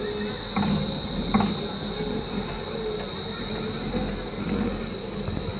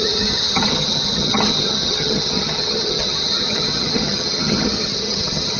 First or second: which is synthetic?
second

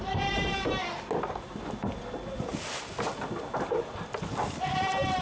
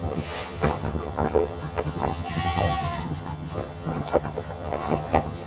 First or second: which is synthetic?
second